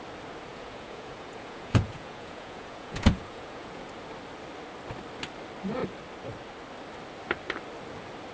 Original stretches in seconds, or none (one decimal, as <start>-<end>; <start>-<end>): 0.0-0.5; 3.9-8.3